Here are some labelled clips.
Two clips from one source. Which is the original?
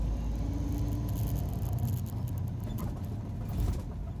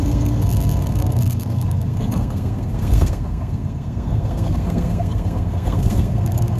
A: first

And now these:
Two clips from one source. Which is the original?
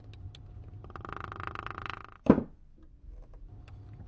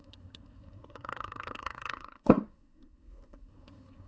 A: first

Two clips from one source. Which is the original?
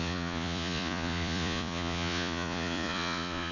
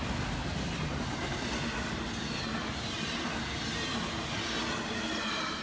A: second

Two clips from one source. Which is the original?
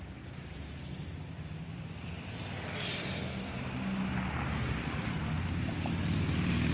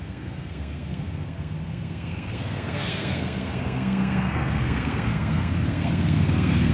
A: first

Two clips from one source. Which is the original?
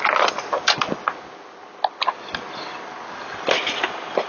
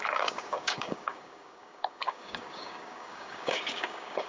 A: first